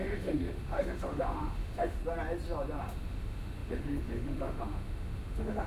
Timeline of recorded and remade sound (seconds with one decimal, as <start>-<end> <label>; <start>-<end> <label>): 0.0-2.0 remade; 2.0-2.8 recorded; 2.8-5.7 remade